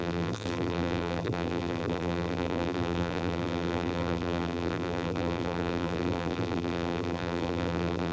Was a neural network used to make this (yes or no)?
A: yes